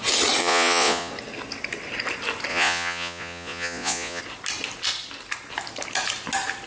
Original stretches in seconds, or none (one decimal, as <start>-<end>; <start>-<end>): 0.0-0.4; 1.1-2.5; 4.2-6.7